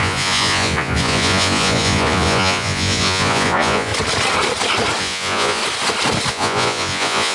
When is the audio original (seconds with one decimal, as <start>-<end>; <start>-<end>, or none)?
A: 3.9-5.0; 5.6-6.3